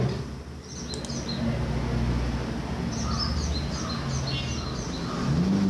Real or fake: real